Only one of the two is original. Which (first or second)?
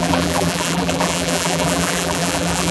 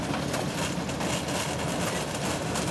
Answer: second